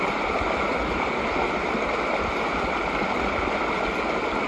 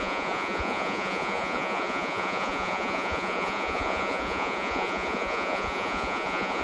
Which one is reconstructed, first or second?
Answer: second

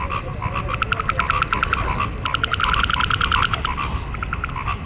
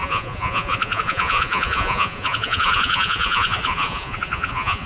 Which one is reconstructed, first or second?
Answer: second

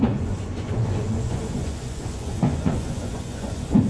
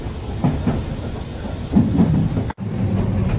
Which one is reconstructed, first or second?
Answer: first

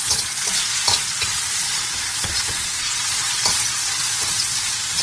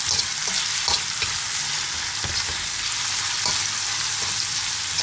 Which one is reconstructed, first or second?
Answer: first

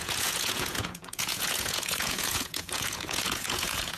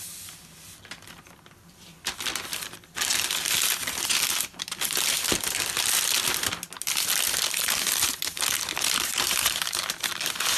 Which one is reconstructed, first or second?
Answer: first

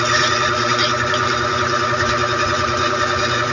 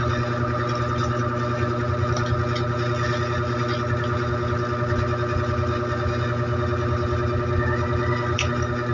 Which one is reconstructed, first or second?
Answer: first